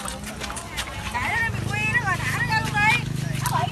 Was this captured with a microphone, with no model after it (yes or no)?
yes